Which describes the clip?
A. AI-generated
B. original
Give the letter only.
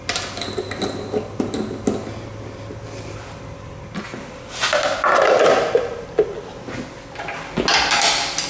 B